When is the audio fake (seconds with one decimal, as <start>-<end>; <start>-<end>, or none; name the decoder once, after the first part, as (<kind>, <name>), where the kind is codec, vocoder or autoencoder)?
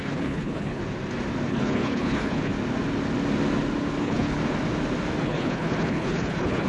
0.0-0.8 (codec, HILCodec); 1.5-2.5; 4.0-4.4; 5.2-6.7